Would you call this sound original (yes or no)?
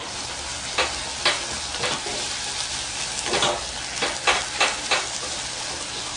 yes